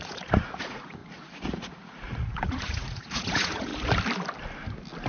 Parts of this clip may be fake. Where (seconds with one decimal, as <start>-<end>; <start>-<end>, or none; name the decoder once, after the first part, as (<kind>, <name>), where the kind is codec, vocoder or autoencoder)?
0.0-3.7 (vocoder, Vocos)